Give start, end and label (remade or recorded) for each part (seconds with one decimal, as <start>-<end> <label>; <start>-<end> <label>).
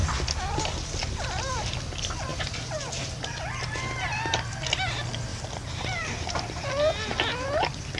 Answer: 0.0-8.0 recorded